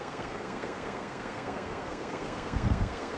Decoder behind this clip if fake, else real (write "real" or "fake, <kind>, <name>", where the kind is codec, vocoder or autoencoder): fake, codec, SNAC